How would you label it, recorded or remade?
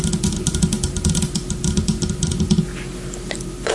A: recorded